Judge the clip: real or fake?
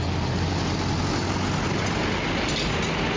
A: real